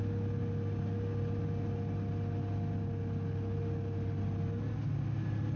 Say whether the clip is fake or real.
real